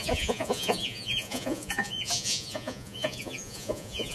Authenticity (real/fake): fake